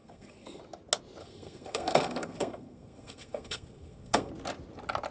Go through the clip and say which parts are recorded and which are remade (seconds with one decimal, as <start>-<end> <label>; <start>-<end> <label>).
0.0-0.6 remade; 0.6-1.2 recorded; 1.2-4.3 remade; 4.3-5.1 recorded